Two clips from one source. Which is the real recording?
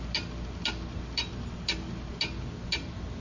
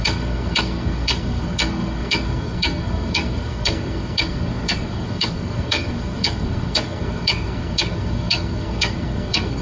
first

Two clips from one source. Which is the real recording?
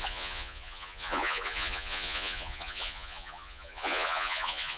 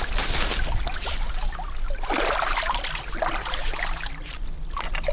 second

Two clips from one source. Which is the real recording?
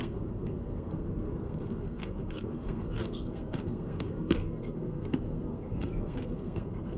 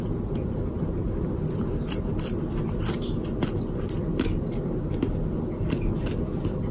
second